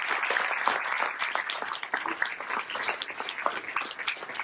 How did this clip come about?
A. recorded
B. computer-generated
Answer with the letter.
A